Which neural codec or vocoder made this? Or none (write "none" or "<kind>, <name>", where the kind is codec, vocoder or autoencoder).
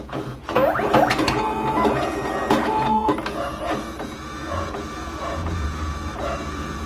vocoder, Vocos